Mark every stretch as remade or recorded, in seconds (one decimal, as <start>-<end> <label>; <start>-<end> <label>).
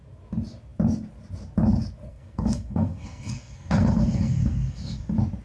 0.0-2.1 recorded; 2.1-5.0 remade; 5.0-5.4 recorded